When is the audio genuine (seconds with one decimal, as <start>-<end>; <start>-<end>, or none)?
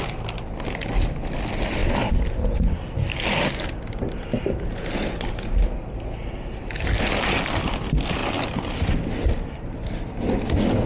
0.0-10.9